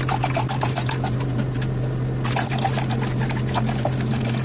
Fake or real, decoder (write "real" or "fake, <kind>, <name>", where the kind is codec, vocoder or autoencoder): real